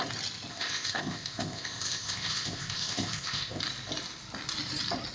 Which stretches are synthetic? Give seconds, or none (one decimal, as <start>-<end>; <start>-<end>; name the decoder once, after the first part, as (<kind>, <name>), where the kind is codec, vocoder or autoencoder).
0.5-3.6 (codec, ZipCodec)

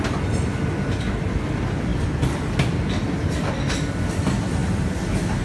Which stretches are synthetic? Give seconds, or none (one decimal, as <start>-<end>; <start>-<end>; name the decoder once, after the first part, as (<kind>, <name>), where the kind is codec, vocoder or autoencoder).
none

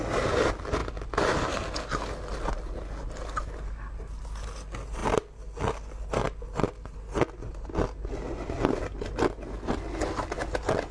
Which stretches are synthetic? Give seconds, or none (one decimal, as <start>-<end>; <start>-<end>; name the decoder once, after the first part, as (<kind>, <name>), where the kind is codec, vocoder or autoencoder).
none

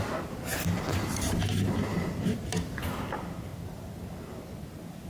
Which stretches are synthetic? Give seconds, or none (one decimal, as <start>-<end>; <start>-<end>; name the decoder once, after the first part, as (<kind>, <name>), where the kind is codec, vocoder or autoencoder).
none

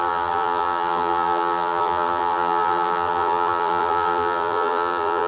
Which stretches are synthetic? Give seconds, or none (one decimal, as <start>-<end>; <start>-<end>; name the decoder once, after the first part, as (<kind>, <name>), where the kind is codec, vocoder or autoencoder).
0.0-5.3 (vocoder, BigVGAN v2)

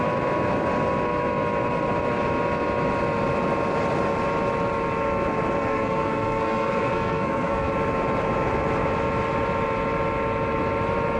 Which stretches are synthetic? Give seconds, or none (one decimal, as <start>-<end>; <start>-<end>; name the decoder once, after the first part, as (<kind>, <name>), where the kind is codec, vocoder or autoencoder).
5.6-7.7 (codec, SNAC)

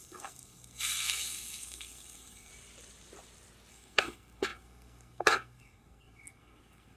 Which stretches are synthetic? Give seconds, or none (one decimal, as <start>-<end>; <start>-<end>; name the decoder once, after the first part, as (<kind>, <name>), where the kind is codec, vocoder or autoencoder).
0.0-2.5 (codec, SNAC); 3.7-7.0

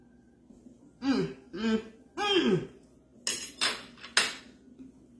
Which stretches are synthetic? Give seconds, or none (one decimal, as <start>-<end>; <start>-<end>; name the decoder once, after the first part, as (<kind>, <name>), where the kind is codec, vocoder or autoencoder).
none